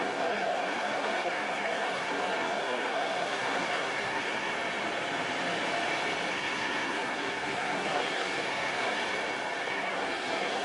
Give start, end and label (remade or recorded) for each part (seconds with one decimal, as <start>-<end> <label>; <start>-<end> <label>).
0.0-4.5 remade; 4.5-6.3 recorded; 6.3-9.0 remade; 9.0-9.6 recorded; 9.6-10.6 remade